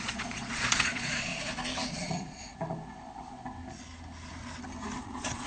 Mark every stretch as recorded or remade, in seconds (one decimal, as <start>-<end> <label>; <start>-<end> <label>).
0.0-1.3 remade; 1.3-1.9 recorded; 1.9-2.5 remade; 2.5-5.0 recorded; 5.0-5.5 remade